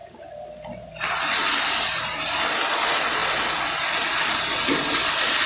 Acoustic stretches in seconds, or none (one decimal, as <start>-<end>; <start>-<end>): 0.0-5.5